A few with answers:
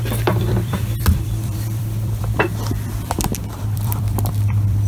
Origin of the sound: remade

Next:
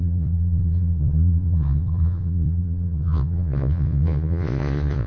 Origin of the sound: remade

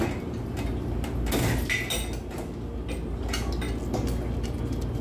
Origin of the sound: recorded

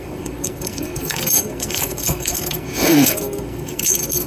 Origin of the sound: remade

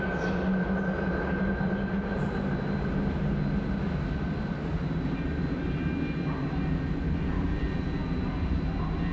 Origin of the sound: recorded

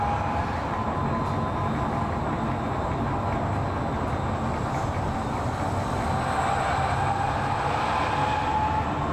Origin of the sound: recorded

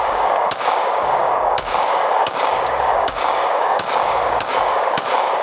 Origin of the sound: remade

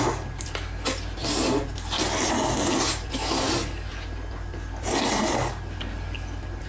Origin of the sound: recorded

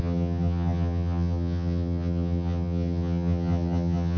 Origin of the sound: remade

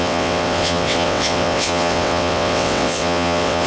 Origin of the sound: remade